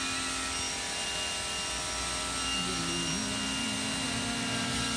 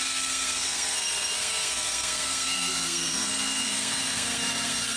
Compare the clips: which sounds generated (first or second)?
second